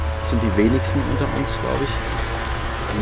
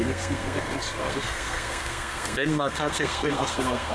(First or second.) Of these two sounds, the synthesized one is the second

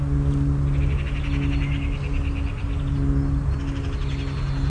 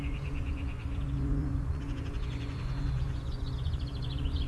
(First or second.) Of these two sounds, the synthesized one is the second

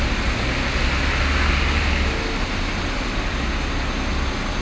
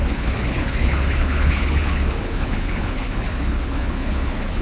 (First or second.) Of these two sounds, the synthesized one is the second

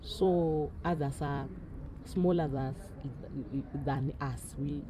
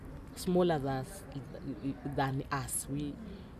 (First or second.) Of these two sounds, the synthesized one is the first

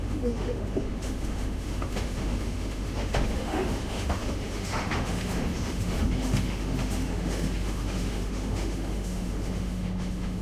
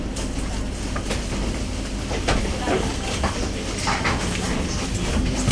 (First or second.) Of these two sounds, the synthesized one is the first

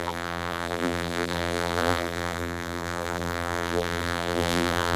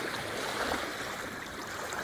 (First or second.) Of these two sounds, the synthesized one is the first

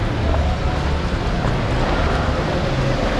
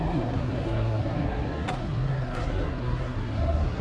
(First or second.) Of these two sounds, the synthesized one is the second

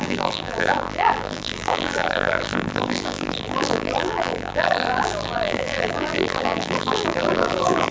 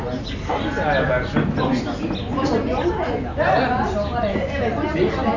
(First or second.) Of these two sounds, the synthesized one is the first